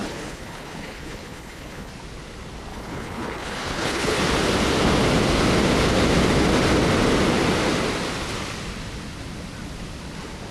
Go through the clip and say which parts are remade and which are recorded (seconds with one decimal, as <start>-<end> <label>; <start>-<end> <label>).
0.0-1.9 remade; 1.9-2.7 recorded; 2.7-4.2 remade; 4.2-10.5 recorded